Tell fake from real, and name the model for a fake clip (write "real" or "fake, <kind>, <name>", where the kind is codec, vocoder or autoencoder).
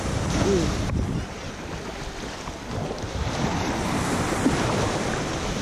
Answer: fake, vocoder, BigVGAN v2